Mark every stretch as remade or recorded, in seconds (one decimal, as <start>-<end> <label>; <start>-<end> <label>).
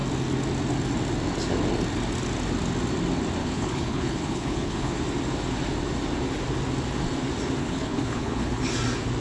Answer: 0.0-3.4 recorded; 3.4-4.9 remade; 4.9-7.6 recorded; 7.6-8.7 remade; 8.7-9.2 recorded